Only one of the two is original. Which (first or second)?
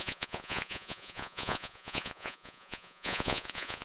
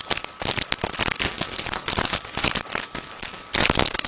second